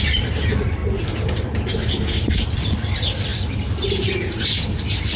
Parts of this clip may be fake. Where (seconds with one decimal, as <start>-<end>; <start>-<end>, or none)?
none